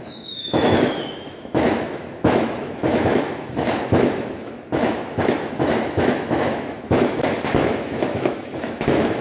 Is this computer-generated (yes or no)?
yes